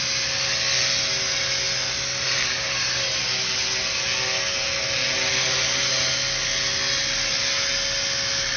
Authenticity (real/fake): real